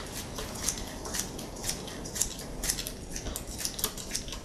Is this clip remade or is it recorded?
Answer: recorded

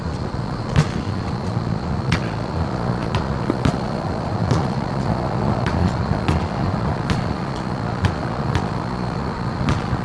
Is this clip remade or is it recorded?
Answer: remade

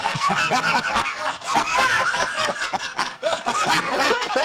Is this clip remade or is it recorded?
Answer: remade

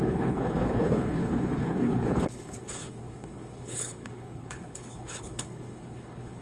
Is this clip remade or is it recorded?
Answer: remade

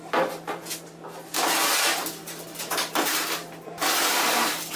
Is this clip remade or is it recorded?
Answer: recorded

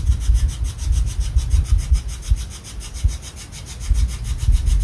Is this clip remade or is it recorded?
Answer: recorded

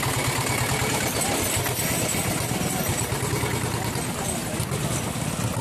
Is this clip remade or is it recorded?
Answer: recorded